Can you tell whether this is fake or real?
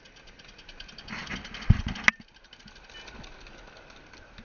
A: real